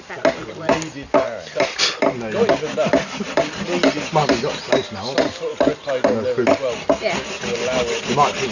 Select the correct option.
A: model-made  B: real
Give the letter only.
B